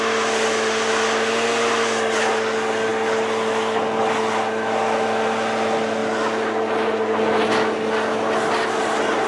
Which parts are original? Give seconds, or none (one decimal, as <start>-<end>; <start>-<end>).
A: 0.0-9.3